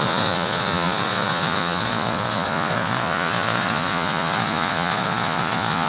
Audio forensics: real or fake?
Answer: fake